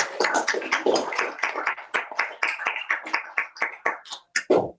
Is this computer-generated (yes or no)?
no